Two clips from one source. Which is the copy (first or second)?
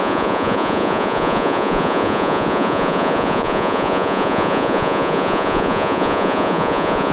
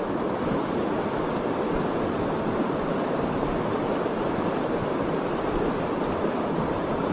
first